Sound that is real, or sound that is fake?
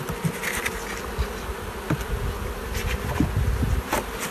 real